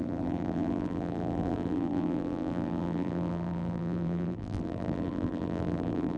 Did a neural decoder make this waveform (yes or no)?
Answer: yes